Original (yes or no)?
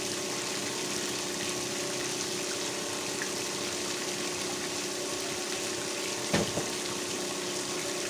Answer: yes